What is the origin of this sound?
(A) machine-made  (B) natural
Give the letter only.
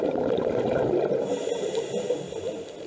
B